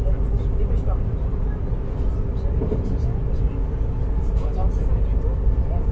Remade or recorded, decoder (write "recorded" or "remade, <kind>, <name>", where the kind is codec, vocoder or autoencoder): recorded